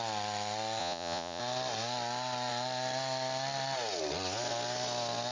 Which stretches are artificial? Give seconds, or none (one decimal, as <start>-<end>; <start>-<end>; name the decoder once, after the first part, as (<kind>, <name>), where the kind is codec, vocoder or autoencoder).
0.8-1.4 (vocoder, Vocos)

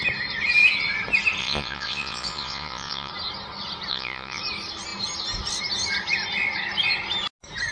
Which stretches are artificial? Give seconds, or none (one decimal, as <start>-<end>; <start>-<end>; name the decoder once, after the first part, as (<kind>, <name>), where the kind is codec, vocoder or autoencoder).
1.4-3.1 (vocoder, Vocos); 3.9-4.4

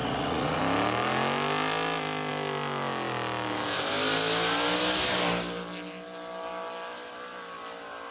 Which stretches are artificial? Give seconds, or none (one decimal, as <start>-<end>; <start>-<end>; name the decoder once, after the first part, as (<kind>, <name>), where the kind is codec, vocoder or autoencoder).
0.0-0.6 (vocoder, Vocos)

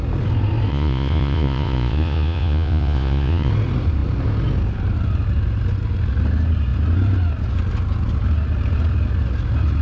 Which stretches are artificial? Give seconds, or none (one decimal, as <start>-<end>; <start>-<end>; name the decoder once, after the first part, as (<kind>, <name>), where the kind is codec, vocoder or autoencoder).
0.7-3.5 (vocoder, Vocos)

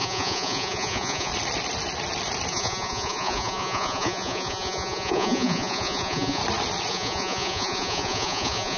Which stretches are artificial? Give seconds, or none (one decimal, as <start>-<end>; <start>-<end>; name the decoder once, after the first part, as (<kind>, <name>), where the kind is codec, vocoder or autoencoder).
0.0-1.3 (vocoder, Vocos); 2.5-6.4; 6.9-8.8

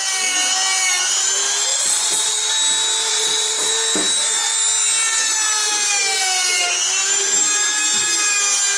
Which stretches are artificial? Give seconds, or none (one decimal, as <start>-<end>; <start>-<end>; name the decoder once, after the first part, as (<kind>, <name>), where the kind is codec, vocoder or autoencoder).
1.7-2.5 (vocoder, Vocos); 3.1-3.7